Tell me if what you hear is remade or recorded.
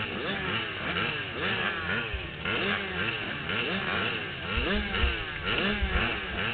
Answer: recorded